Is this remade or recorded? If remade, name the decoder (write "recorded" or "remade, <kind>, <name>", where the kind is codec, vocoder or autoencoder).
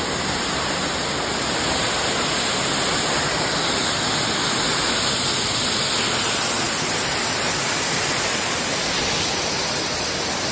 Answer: recorded